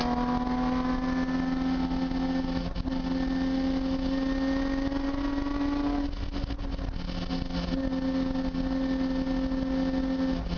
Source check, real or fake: real